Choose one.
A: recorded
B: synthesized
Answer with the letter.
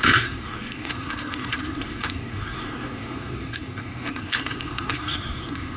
B